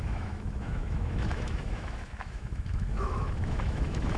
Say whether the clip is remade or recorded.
remade